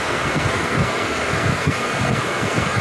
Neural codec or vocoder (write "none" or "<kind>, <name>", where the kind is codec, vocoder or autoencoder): codec, SNAC